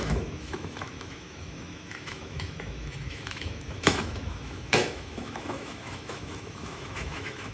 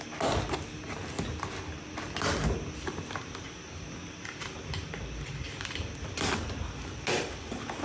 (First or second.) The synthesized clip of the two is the first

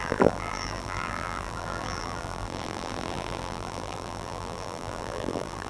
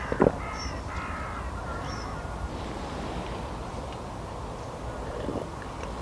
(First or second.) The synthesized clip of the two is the first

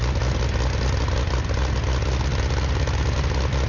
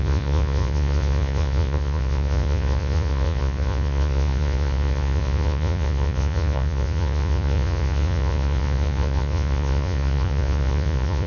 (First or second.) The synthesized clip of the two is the second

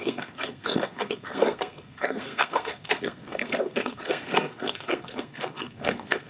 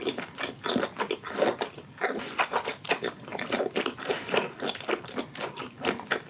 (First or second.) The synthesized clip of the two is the first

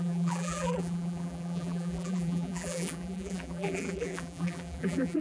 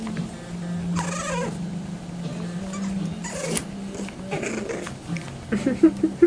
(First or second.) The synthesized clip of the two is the first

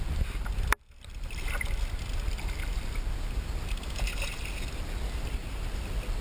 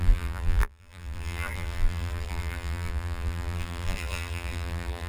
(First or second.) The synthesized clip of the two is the second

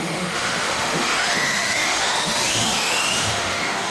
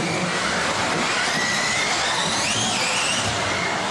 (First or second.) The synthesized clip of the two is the first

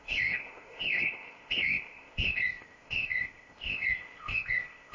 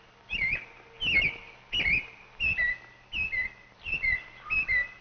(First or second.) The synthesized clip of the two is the first